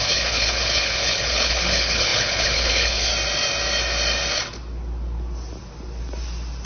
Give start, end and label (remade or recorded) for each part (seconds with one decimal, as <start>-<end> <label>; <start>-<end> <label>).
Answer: 0.0-3.1 remade; 3.1-6.7 recorded